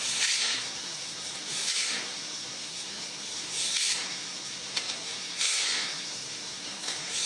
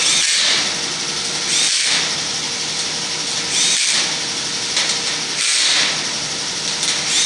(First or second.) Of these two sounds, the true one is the second